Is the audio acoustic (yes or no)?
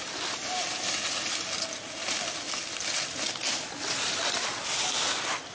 yes